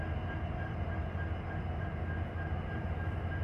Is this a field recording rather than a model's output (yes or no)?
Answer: yes